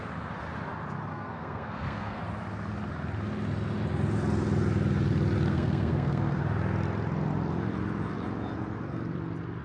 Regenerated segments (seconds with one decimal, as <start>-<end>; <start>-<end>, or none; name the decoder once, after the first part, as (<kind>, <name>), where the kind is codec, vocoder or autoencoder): 1.1-2.2 (codec, SNAC); 5.5-6.4